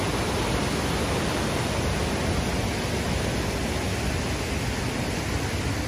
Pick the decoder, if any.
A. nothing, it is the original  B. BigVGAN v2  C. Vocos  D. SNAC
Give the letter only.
A